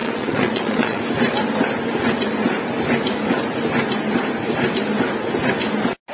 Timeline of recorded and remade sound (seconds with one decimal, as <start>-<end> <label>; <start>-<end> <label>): 0.0-1.0 remade; 1.0-6.1 recorded

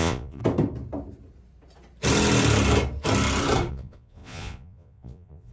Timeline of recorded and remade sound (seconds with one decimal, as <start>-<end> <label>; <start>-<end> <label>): 0.0-0.4 remade; 0.4-3.7 recorded; 3.7-5.5 remade

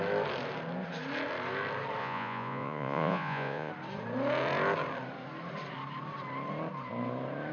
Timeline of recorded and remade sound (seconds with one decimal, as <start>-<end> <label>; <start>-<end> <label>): 0.0-2.0 recorded; 2.0-3.7 remade; 3.7-7.5 recorded

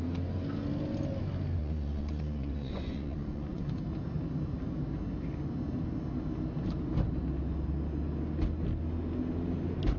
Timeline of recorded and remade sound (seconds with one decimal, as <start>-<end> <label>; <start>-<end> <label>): 0.0-1.6 recorded; 1.6-3.7 remade; 3.7-10.0 recorded

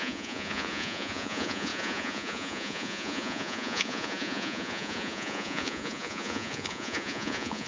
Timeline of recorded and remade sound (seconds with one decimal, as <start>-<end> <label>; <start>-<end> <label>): 0.0-7.7 remade

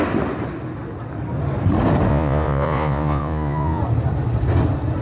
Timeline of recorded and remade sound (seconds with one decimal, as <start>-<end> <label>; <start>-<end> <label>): 0.0-2.1 recorded; 2.1-3.8 remade; 3.8-5.0 recorded

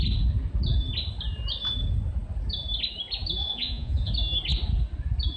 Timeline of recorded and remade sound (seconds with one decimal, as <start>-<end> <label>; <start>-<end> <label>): 0.0-3.4 recorded; 3.4-4.1 remade; 4.1-5.4 recorded